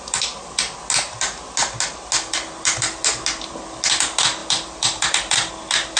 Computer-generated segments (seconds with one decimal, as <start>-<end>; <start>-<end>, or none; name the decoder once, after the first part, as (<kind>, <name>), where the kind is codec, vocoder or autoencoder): 4.4-5.5 (vocoder, BigVGAN v2)